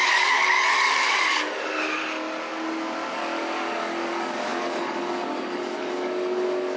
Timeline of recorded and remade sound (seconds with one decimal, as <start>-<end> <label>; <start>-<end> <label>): 0.0-2.0 remade; 2.0-3.1 recorded; 3.1-6.8 remade